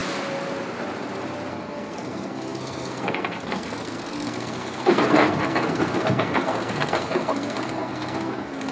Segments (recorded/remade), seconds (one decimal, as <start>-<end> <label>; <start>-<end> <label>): 0.0-1.5 recorded; 1.5-8.7 remade